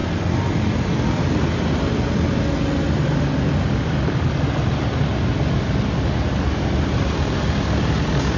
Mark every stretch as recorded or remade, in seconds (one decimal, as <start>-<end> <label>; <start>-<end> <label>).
0.0-8.4 recorded